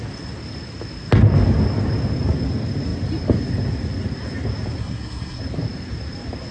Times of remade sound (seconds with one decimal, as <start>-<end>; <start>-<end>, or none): 4.8-5.4